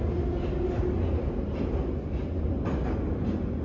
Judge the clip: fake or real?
real